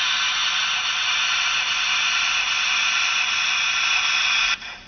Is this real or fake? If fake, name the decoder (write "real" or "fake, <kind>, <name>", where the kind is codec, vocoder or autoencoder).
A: real